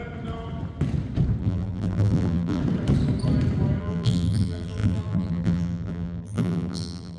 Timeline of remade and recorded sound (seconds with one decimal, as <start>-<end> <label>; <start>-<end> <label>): 0.0-1.4 recorded; 1.4-2.6 remade; 2.6-3.8 recorded; 3.8-7.2 remade